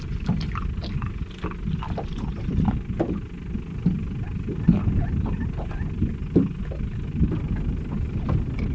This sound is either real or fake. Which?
real